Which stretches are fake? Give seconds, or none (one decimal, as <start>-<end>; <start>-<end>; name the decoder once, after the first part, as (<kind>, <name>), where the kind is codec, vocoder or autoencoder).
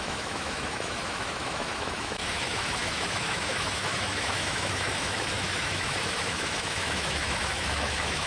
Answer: 0.0-8.3 (autoencoder, DAC-VAE)